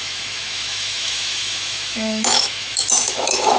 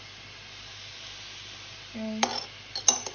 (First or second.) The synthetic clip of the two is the first